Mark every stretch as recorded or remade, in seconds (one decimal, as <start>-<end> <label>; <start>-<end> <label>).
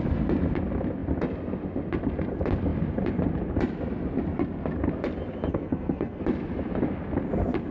0.0-5.5 recorded; 5.5-6.2 remade; 6.2-7.7 recorded